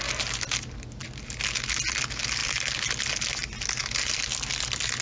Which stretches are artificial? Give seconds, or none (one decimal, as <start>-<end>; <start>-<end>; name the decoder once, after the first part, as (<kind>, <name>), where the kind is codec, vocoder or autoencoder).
none